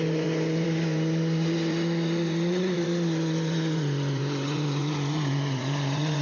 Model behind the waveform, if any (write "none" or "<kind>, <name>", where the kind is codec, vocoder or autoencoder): vocoder, Vocos